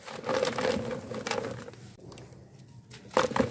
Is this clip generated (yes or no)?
no